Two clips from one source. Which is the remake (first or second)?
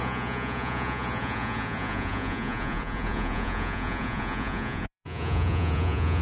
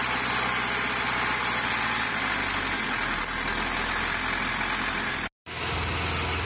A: first